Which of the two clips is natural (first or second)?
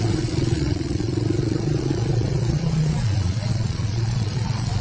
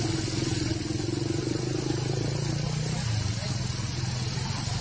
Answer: second